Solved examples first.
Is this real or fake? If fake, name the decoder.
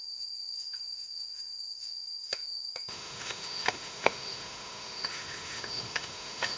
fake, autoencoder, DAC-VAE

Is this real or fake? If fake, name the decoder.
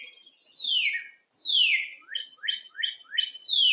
real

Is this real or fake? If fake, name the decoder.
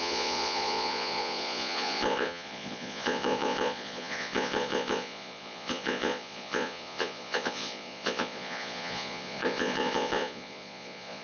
fake, vocoder, Vocos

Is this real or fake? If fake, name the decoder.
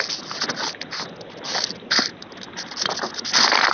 real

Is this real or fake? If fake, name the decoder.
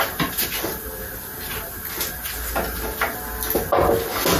real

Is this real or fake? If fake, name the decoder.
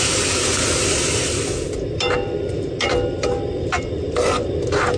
real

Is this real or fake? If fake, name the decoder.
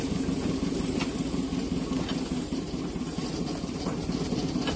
real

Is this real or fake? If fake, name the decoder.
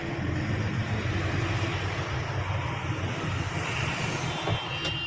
real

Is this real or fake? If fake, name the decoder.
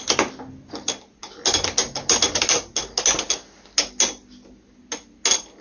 real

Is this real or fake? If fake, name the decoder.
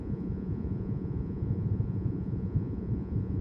fake, vocoder, Vocos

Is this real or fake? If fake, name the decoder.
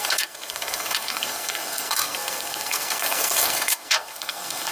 fake, codec, SNAC